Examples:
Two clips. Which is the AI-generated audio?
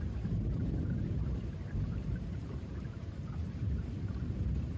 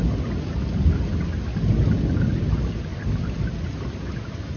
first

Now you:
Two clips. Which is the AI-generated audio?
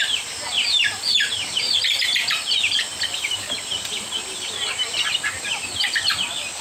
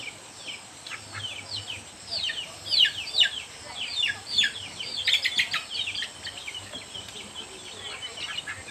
first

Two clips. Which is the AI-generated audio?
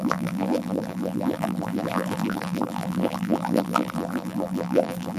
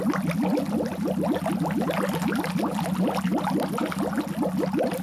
first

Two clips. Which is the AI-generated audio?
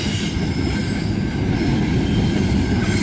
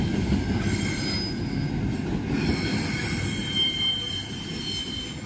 first